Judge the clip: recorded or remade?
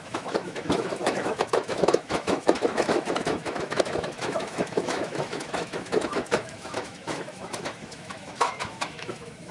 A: remade